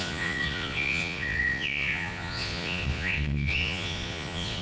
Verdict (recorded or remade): remade